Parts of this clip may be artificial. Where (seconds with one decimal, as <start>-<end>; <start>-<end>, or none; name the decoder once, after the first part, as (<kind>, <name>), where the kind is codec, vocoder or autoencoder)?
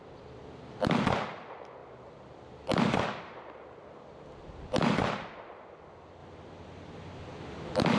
1.8-5.3 (vocoder, BigVGAN v2)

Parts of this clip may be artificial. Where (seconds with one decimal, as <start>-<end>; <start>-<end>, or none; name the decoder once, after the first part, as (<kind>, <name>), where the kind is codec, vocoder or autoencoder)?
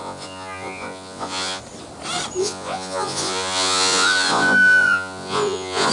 0.0-1.6 (vocoder, Vocos); 2.4-5.9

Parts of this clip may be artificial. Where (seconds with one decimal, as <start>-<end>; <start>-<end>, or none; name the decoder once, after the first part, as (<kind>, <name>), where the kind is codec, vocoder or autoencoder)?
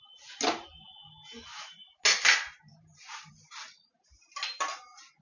1.5-2.0 (vocoder, BigVGAN v2); 2.7-3.3